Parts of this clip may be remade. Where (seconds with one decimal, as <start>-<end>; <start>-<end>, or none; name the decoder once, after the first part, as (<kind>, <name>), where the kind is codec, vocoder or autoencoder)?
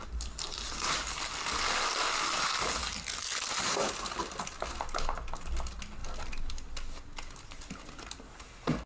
none